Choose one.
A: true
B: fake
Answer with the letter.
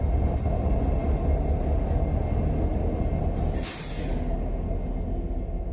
A